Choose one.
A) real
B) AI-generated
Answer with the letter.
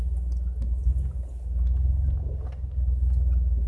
A